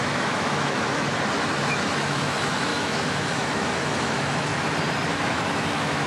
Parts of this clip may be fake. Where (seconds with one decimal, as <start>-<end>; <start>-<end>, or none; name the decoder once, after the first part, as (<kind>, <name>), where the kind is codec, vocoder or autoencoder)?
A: 0.0-1.1 (autoencoder, DAC-VAE); 1.7-4.5; 5.1-6.1